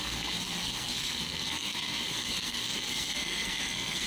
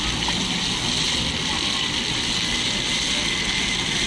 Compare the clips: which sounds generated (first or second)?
first